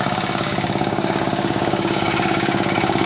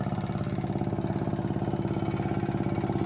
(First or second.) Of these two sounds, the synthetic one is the first